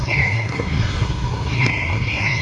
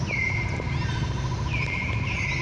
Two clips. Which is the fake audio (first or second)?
first